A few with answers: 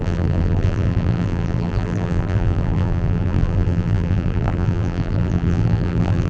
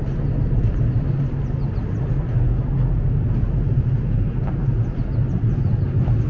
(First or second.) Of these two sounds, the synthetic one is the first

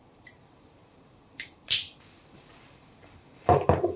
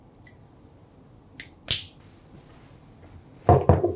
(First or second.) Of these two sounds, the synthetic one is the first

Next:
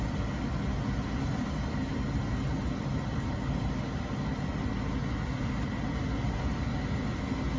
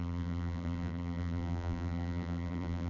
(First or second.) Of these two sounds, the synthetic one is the second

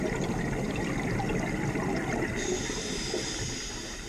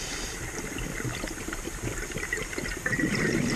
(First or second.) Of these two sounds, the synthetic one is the second